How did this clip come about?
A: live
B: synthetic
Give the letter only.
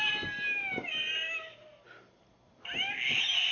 A